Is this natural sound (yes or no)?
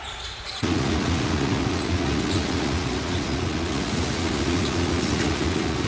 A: no